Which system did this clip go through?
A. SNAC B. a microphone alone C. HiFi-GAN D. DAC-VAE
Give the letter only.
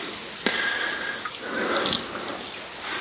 B